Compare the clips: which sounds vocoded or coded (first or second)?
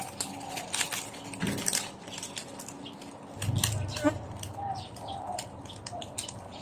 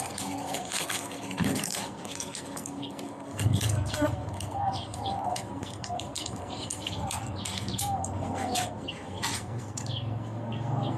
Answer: second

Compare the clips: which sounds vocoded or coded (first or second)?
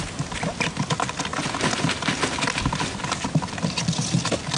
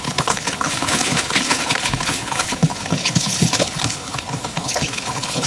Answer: second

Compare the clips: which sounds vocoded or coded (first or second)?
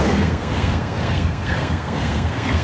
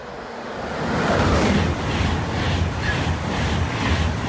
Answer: first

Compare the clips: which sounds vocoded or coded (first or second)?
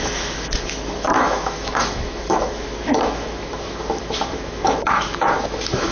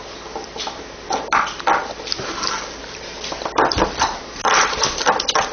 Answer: first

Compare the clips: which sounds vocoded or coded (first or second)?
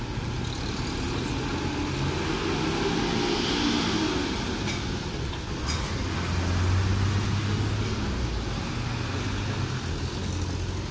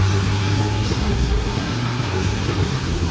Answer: second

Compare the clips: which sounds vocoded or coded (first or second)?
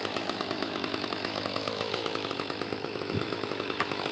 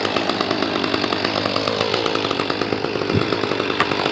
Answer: first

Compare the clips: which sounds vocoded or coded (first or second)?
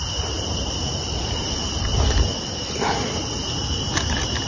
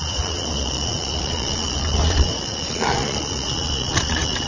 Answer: second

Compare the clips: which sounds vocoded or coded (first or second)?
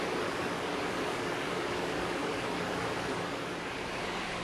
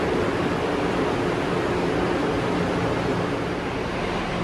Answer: first